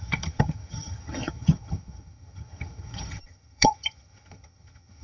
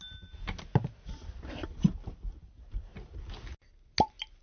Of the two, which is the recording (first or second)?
second